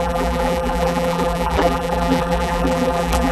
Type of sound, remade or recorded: remade